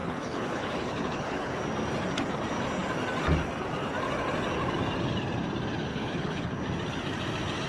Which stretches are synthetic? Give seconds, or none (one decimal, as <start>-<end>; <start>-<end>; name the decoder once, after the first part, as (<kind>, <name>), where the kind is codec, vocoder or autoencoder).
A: 0.0-1.6 (codec, HILCodec); 5.9-6.6